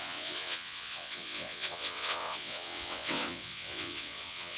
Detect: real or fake fake